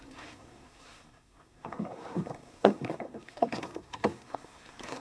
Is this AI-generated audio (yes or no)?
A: yes